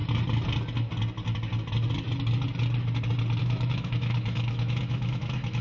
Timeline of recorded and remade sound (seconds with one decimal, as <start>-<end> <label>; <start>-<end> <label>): 0.0-3.4 recorded; 3.4-5.6 remade